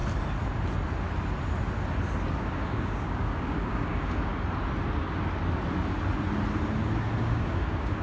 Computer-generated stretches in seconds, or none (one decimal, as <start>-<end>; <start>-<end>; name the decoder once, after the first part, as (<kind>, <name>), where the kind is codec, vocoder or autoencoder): 2.4-4.3 (codec, DAC); 7.2-8.0